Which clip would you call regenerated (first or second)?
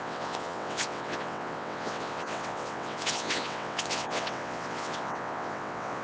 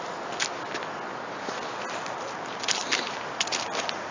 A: first